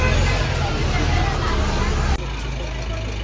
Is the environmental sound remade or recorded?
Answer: recorded